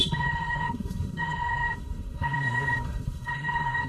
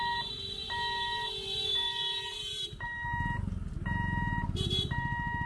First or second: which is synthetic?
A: first